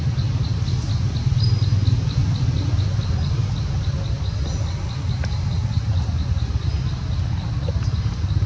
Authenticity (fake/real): real